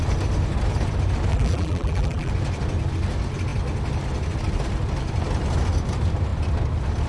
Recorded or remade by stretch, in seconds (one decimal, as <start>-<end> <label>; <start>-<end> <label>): 0.0-1.3 recorded; 1.3-2.3 remade; 2.3-7.1 recorded